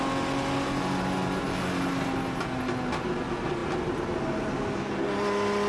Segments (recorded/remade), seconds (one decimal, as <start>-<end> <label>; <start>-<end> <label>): 0.0-5.7 recorded